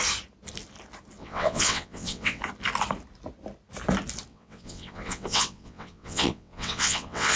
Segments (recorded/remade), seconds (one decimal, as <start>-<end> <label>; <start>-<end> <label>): 0.0-1.2 recorded; 1.2-2.4 remade; 2.4-4.3 recorded; 4.3-7.4 remade